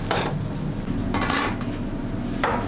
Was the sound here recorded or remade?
recorded